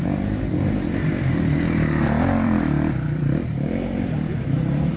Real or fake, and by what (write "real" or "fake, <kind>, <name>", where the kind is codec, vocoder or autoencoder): fake, vocoder, BigVGAN v2